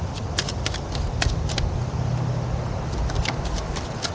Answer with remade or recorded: recorded